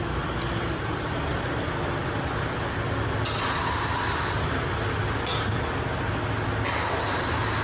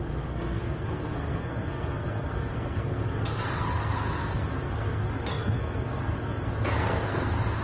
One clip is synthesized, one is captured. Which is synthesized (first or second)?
second